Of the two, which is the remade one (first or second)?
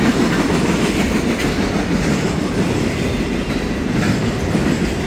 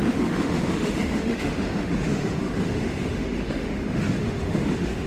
second